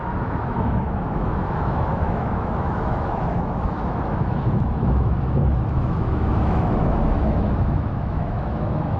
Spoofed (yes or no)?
yes